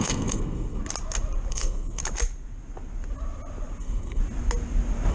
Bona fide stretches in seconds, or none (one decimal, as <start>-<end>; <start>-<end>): 0.8-1.5; 2.0-3.8; 4.2-5.1